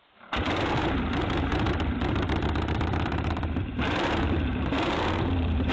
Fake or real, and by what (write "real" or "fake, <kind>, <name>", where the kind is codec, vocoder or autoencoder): fake, vocoder, BigVGAN v2